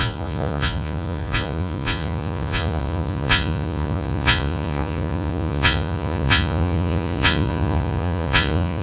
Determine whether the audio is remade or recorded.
remade